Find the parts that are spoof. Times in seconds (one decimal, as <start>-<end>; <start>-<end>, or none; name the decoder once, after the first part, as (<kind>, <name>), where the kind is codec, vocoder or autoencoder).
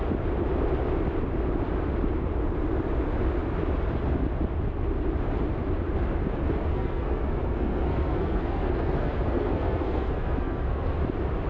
6.6-11.0 (codec, SNAC)